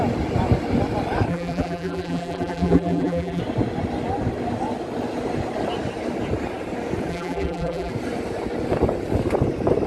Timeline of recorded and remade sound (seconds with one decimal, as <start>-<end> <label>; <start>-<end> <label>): 0.0-1.3 recorded; 1.3-3.4 remade; 3.4-7.1 recorded; 7.1-7.9 remade; 7.9-9.9 recorded